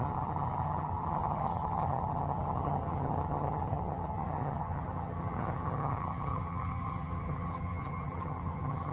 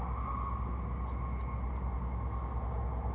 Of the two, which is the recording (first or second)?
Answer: second